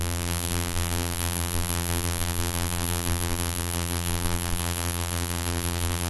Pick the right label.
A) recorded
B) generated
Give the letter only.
B